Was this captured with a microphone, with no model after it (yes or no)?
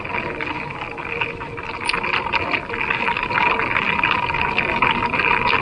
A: yes